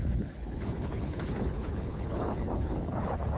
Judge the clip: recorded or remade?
remade